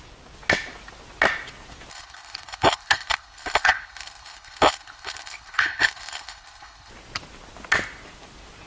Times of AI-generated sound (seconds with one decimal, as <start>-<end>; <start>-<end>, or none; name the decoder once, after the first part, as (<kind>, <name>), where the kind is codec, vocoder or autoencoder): 1.9-6.9 (codec, HILCodec)